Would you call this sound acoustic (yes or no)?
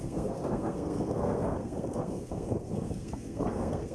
no